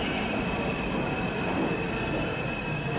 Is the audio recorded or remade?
recorded